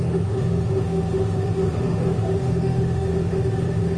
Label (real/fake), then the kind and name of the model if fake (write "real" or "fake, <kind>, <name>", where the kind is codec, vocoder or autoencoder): fake, autoencoder, DAC-VAE